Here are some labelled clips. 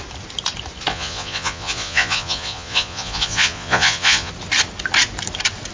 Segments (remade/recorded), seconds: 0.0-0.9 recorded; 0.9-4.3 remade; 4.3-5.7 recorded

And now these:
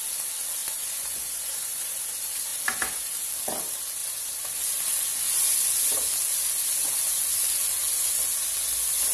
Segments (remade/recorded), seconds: 0.0-0.6 recorded; 0.6-2.0 remade; 2.0-9.1 recorded

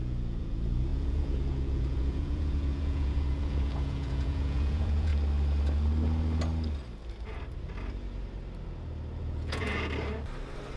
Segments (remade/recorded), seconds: 0.0-5.1 remade; 5.1-9.2 recorded; 9.2-9.7 remade; 9.7-10.8 recorded

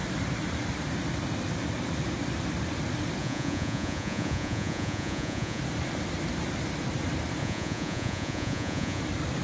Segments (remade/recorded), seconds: 0.0-3.2 recorded; 3.2-5.6 remade; 5.6-7.4 recorded; 7.4-9.0 remade; 9.0-9.4 recorded

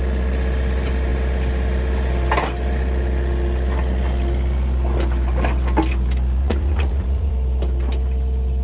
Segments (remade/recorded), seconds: 0.0-6.4 recorded; 6.4-7.3 remade; 7.3-8.6 recorded

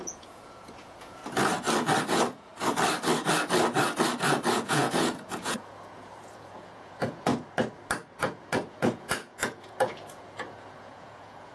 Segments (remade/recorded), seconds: 0.0-1.2 remade; 1.2-2.0 recorded; 2.0-2.5 remade; 2.5-4.5 recorded; 4.5-7.3 remade; 7.3-8.2 recorded; 8.2-11.5 remade

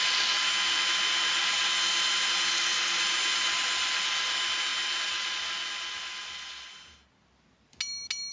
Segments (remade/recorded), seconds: 0.0-8.3 recorded

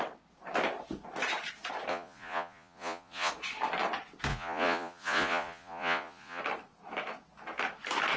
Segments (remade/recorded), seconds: 0.0-1.9 recorded; 1.9-3.3 remade; 3.3-4.3 recorded; 4.3-6.4 remade; 6.4-8.2 recorded